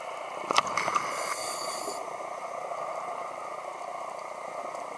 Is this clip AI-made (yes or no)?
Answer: no